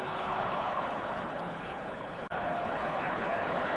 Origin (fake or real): fake